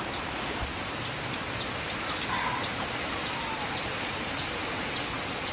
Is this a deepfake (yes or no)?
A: yes